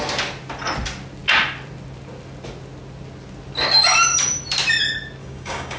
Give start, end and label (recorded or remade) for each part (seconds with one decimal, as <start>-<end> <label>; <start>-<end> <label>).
0.0-5.2 recorded; 5.2-5.8 remade